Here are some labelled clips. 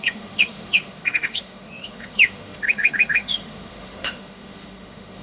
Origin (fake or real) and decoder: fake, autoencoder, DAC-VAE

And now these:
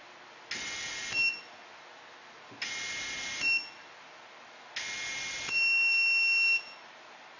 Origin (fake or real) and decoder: real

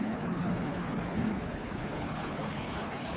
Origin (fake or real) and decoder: fake, codec, HILCodec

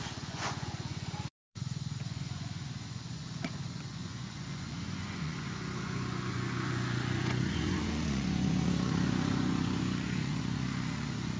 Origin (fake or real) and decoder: fake, vocoder, Vocos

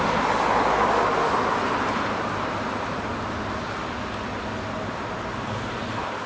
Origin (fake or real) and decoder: real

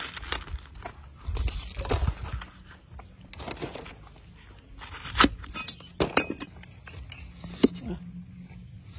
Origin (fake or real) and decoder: real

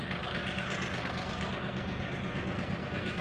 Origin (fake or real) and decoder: fake, codec, SNAC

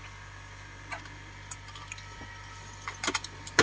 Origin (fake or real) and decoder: real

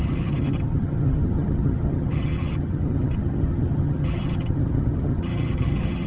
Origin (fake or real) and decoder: fake, vocoder, HiFi-GAN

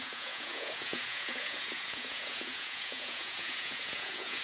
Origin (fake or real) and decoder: fake, vocoder, Vocos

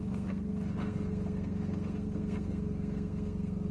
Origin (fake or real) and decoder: fake, codec, SNAC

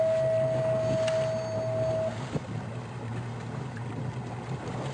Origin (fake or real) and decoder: real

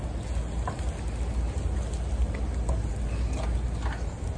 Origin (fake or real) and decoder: real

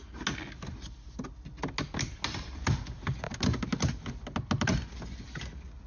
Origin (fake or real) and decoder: real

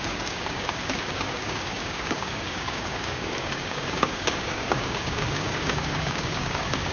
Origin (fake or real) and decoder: fake, codec, DAC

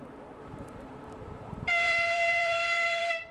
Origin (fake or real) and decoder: fake, vocoder, BigVGAN v2